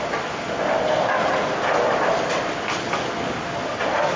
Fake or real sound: real